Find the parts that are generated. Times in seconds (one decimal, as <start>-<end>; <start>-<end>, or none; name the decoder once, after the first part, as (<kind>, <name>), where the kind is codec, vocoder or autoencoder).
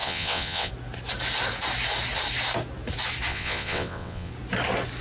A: 0.0-0.7 (vocoder, WaveNeXt); 3.3-4.3